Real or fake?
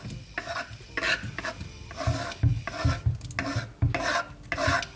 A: real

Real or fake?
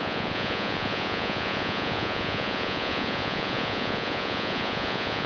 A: fake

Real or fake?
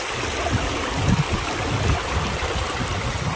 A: real